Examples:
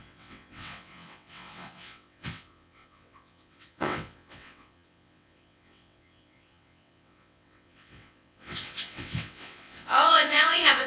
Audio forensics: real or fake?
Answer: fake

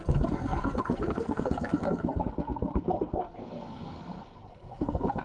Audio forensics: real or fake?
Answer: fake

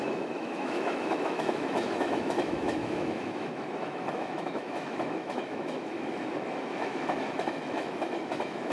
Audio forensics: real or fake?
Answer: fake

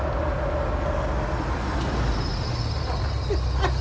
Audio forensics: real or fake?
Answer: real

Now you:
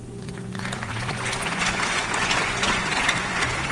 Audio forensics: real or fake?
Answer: fake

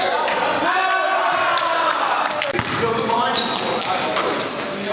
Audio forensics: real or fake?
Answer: real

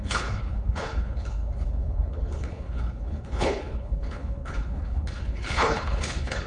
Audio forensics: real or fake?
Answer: fake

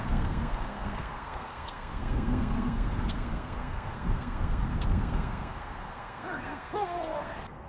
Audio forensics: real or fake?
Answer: fake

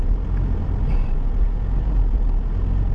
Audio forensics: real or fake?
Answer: real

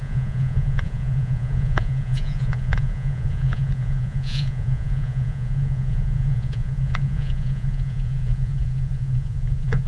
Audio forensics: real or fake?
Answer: fake